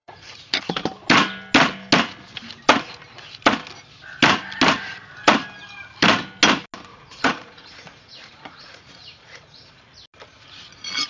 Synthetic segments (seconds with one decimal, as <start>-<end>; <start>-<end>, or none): 0.0-0.6; 6.9-9.7